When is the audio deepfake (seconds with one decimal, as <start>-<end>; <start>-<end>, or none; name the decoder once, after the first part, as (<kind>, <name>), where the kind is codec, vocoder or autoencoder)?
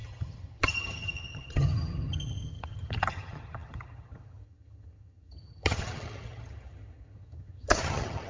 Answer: 0.0-8.3 (vocoder, HiFi-GAN)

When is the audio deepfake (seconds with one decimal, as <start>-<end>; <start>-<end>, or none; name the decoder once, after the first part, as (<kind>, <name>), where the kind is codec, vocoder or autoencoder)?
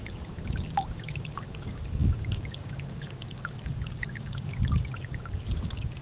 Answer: 0.0-6.0 (codec, DAC)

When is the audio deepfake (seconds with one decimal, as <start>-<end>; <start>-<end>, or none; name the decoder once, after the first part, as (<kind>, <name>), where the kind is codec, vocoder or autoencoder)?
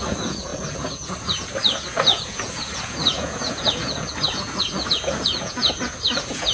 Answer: 0.0-6.5 (vocoder, Vocos)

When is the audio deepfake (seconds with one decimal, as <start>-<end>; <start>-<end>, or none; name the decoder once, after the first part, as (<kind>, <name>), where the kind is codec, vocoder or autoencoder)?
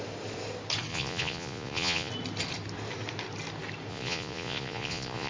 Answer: 0.9-2.1 (vocoder, Vocos); 3.9-5.3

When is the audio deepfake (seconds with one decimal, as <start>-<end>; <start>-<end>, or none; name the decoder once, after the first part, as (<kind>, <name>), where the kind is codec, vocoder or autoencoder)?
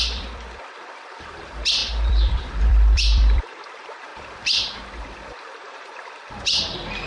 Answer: 0.0-7.1 (vocoder, BigVGAN v2)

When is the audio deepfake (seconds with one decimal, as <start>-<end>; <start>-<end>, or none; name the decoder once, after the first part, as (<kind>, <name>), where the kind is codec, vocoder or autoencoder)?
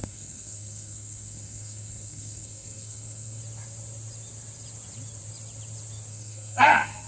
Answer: 0.0-3.4 (codec, SNAC); 6.1-7.1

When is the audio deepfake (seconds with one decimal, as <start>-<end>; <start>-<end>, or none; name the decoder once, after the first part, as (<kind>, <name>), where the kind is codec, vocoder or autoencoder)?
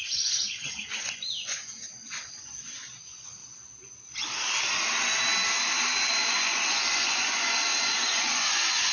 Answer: 0.0-3.4 (vocoder, Vocos); 6.1-8.9